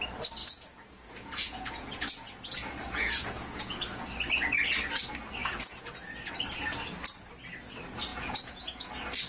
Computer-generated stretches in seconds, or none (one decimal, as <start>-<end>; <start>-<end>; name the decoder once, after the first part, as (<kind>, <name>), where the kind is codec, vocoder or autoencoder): 0.4-4.0 (vocoder, Vocos); 5.4-6.3; 8.1-8.9